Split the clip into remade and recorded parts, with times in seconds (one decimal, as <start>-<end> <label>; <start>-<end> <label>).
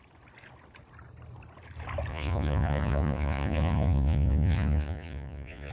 0.0-2.1 recorded; 2.1-5.7 remade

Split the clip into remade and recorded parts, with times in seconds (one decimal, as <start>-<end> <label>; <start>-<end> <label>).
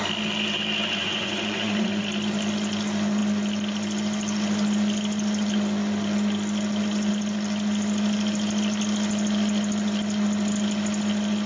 0.0-1.0 recorded; 1.0-2.0 remade; 2.0-11.5 recorded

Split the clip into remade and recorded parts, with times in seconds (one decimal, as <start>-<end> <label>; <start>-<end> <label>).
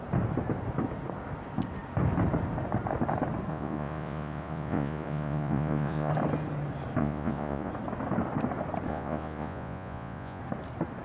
0.0-3.5 recorded; 3.5-6.1 remade; 6.1-7.0 recorded; 7.0-7.7 remade; 7.7-8.9 recorded; 8.9-10.4 remade; 10.4-11.0 recorded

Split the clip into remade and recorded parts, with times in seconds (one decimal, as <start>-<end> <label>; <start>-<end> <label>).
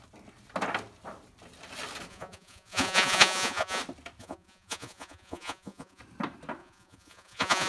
0.0-2.1 recorded; 2.1-3.8 remade; 3.8-4.2 recorded; 4.2-6.0 remade; 6.0-6.6 recorded; 6.6-7.7 remade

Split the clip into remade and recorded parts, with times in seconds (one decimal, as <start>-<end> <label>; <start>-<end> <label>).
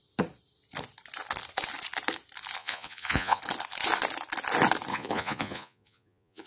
0.0-2.6 recorded; 2.6-3.4 remade; 3.4-4.9 recorded; 4.9-6.5 remade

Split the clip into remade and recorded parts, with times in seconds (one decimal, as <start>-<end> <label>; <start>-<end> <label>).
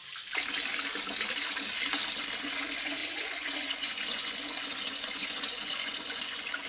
0.0-2.4 recorded; 2.4-6.7 remade